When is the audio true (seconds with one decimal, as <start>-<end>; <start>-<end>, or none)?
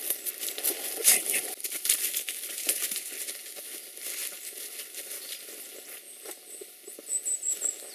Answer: 0.0-1.0; 3.1-7.9